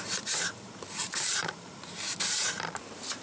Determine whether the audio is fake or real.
fake